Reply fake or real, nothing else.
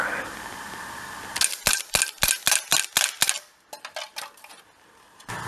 real